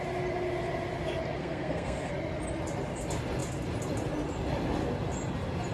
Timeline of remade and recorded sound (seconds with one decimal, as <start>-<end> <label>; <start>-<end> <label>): 0.0-1.4 recorded; 1.4-2.1 remade; 2.1-5.7 recorded